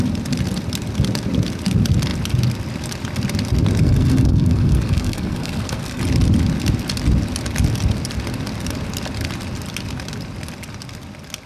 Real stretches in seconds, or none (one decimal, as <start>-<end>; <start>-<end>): 0.0-3.8; 6.0-11.5